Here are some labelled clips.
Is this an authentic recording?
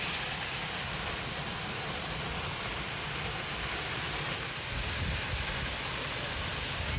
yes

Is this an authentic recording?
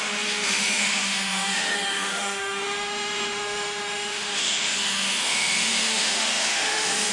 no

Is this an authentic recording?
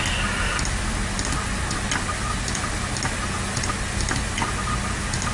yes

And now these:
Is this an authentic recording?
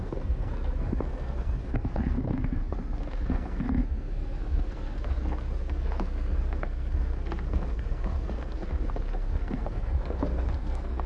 no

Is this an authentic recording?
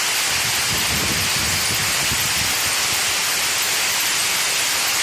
yes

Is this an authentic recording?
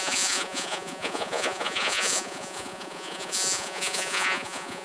no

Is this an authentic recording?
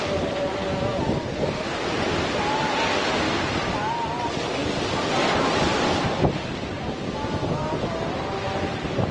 yes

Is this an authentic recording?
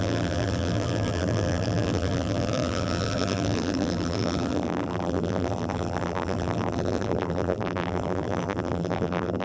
no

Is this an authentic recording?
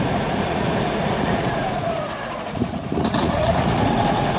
no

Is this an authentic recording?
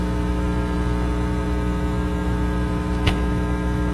no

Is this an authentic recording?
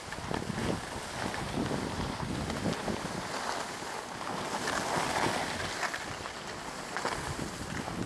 yes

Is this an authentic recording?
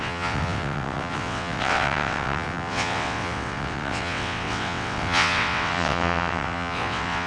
no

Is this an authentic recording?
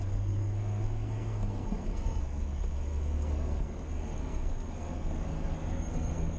no